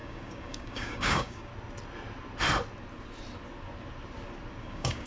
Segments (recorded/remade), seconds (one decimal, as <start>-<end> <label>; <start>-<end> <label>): 0.0-1.5 remade; 1.5-4.6 recorded; 4.6-5.1 remade